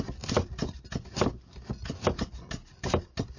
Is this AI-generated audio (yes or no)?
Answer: no